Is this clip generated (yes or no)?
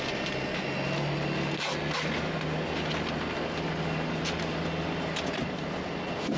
no